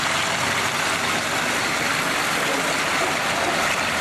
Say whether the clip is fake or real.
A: real